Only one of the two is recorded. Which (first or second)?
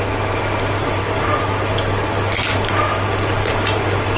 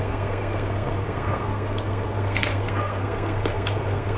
first